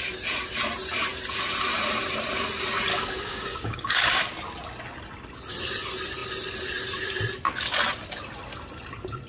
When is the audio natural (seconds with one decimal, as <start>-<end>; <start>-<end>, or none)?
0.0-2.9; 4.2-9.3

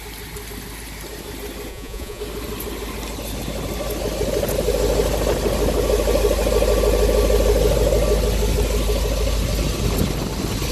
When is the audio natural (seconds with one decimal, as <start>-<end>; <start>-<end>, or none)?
0.0-1.7; 2.2-10.7

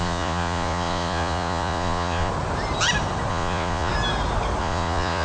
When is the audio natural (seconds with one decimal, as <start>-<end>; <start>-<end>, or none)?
2.3-3.3; 3.9-4.6